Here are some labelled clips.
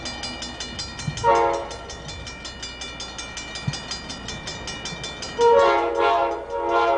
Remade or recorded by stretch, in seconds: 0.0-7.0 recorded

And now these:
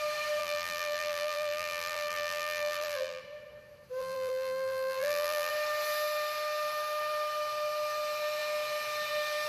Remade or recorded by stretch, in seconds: 0.0-0.4 recorded; 0.4-3.2 remade; 3.2-4.0 recorded; 4.0-5.5 remade; 5.5-9.5 recorded

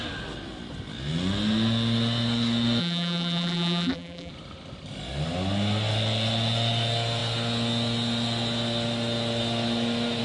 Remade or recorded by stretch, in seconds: 0.0-2.8 recorded; 2.8-4.3 remade; 4.3-10.2 recorded

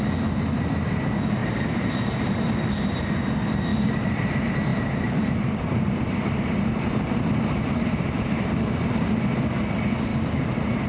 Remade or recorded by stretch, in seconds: 0.0-3.7 recorded; 3.7-4.3 remade; 4.3-4.7 recorded; 4.7-9.1 remade; 9.1-10.1 recorded; 10.1-10.9 remade

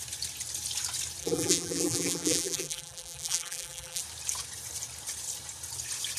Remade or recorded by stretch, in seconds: 0.0-1.2 recorded; 1.2-4.0 remade; 4.0-6.2 recorded